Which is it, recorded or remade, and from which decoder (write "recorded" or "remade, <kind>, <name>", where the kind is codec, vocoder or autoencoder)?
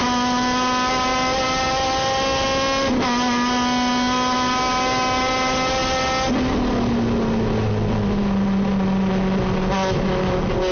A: recorded